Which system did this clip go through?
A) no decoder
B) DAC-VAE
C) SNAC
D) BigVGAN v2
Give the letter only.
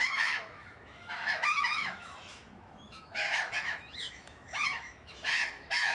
B